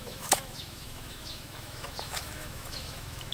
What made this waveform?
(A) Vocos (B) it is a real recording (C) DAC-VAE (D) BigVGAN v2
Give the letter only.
C